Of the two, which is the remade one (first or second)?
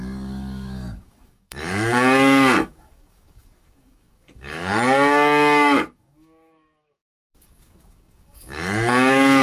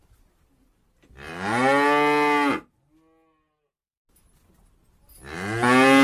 first